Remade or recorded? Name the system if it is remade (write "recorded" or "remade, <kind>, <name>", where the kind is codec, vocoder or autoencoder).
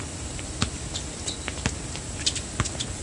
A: recorded